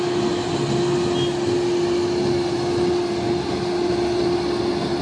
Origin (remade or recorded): recorded